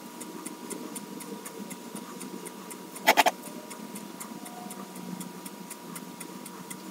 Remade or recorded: recorded